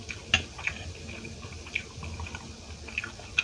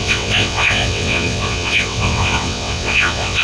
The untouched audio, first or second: first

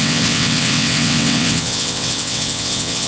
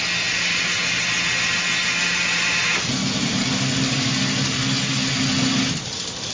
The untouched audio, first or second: second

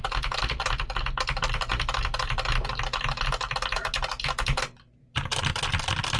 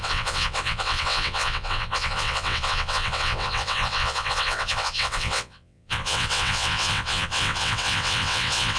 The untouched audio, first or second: first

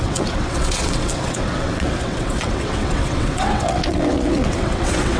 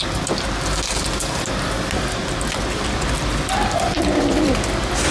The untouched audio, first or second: second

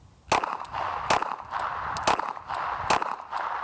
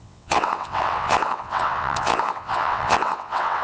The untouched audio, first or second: first